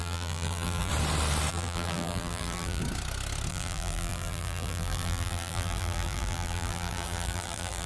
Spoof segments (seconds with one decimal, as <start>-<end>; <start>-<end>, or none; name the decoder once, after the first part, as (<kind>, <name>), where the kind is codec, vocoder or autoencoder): 0.0-0.9 (vocoder, BigVGAN v2); 1.5-2.8; 3.5-7.9